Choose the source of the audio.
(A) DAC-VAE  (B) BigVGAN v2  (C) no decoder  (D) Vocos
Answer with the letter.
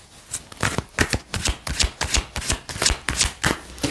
C